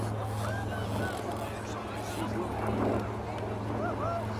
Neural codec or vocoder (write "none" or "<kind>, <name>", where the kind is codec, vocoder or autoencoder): none